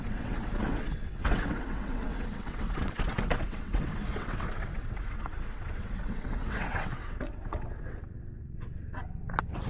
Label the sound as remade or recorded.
remade